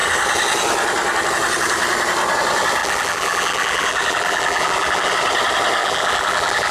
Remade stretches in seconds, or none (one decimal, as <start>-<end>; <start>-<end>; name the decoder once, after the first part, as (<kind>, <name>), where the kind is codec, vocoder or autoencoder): 2.8-5.1 (vocoder, BigVGAN v2); 5.8-6.7